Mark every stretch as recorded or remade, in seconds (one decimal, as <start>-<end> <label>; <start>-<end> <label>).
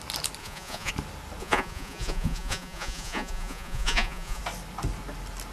0.0-0.4 recorded; 0.4-0.9 remade; 0.9-1.4 recorded; 1.4-4.4 remade; 4.4-5.5 recorded